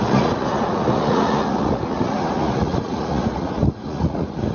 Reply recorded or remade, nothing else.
remade